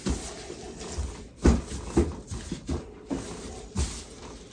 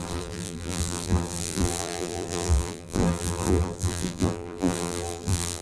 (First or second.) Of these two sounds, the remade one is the second